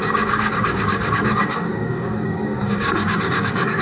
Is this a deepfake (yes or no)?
yes